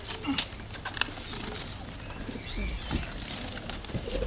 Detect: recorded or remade recorded